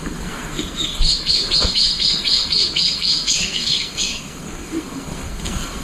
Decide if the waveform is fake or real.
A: fake